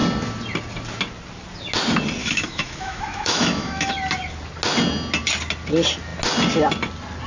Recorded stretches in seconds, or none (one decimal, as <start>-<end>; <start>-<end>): 0.0-2.2; 3.9-7.3